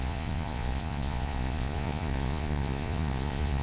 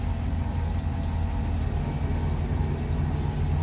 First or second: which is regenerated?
first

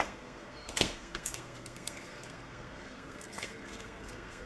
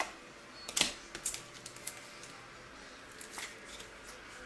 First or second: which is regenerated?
first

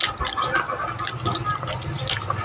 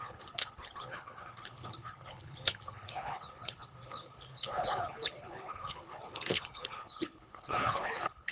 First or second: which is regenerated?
second